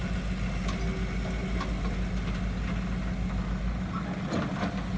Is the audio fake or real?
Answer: real